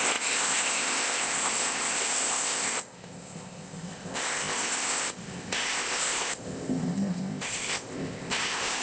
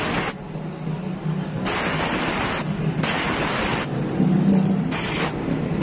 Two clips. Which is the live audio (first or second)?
second